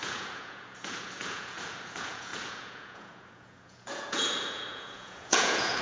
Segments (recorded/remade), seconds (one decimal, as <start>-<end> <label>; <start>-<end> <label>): 0.0-5.8 remade